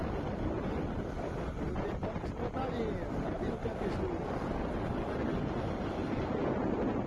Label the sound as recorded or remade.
recorded